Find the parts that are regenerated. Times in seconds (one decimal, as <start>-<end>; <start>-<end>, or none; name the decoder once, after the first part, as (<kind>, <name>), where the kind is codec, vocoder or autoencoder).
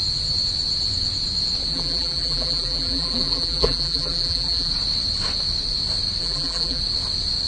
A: 1.7-4.7 (vocoder, BigVGAN v2); 6.2-6.8